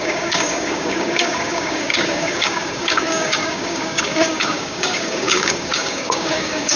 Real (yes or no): no